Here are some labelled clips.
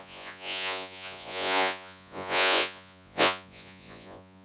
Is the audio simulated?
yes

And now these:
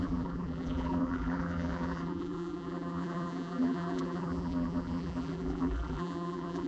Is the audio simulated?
yes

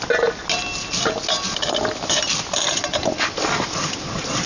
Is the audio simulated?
no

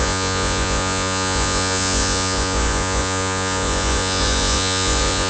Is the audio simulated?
yes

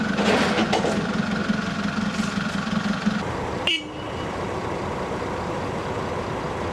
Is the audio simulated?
no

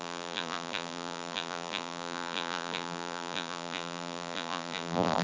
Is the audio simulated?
yes